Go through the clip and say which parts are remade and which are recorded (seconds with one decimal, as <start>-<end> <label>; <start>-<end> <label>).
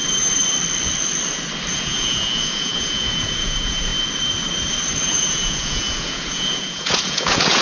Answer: 0.0-1.7 recorded; 1.7-3.9 remade; 3.9-5.0 recorded; 5.0-7.6 remade